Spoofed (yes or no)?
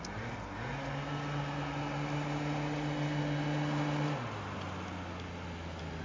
no